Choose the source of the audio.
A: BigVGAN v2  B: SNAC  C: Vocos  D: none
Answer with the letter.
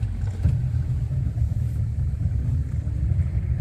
D